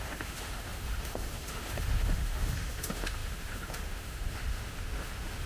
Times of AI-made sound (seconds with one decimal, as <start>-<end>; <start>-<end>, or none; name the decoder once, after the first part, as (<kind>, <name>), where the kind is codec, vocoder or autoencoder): 0.0-5.5 (autoencoder, DAC-VAE)